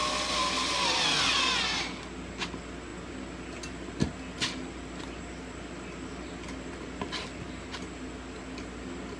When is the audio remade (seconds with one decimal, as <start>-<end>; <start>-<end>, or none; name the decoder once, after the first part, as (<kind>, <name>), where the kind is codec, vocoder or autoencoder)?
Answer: none